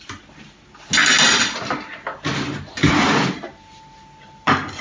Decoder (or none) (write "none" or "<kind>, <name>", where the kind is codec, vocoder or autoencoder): none